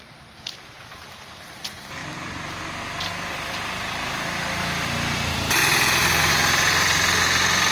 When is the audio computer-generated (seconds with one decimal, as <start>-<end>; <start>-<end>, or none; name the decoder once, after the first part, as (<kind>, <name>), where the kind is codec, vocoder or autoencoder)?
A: 0.0-2.0 (vocoder, BigVGAN v2); 3.8-5.6; 6.3-7.7